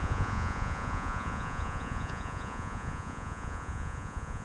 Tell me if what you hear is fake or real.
fake